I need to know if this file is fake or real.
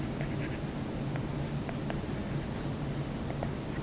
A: real